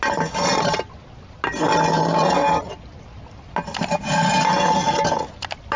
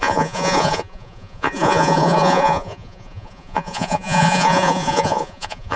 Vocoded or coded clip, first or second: second